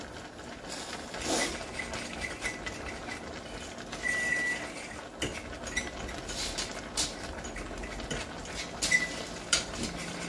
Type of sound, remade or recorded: recorded